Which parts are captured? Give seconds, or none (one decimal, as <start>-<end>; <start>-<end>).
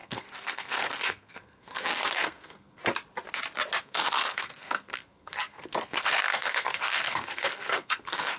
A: 2.8-3.8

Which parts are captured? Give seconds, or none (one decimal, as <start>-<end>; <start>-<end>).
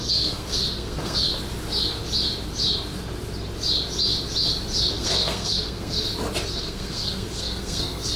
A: 1.3-4.9; 6.1-6.6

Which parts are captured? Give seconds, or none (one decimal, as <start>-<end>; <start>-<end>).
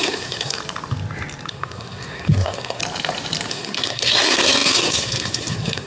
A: 0.6-1.5; 2.8-3.5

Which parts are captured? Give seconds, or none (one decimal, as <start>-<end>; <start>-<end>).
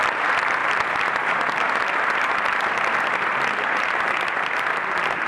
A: 0.0-5.3